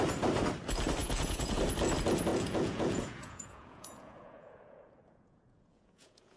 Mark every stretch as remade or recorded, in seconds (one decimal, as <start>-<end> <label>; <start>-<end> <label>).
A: 0.0-1.0 recorded; 1.0-1.6 remade; 1.6-2.3 recorded; 2.3-6.4 remade